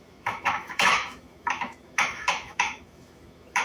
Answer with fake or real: fake